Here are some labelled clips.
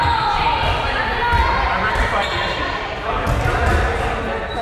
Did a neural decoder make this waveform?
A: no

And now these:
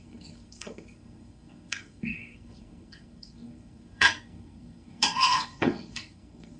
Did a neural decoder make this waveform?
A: yes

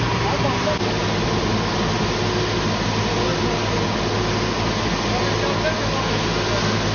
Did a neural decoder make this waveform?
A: no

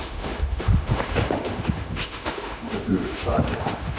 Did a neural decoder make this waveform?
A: yes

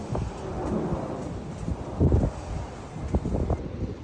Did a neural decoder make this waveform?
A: no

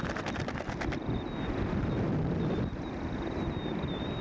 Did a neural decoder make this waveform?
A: yes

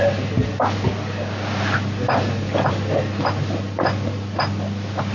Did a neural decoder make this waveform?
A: no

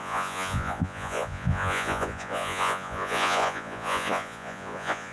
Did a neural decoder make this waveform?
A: yes